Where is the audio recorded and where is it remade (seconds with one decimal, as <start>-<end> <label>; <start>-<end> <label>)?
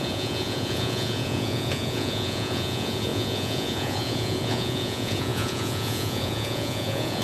0.0-7.2 remade